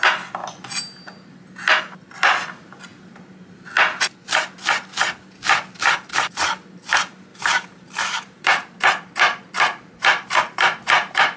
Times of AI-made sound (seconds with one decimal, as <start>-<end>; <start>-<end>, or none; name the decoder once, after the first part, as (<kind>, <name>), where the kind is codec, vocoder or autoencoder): 7.3-11.4 (vocoder, BigVGAN v2)